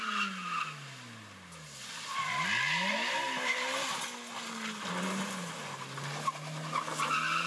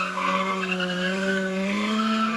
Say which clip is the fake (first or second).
second